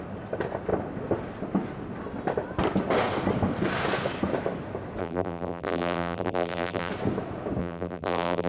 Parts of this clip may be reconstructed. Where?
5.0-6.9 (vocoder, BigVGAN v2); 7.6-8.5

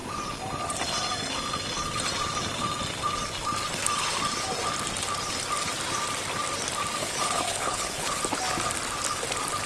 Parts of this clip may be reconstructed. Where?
7.0-8.2 (codec, HILCodec)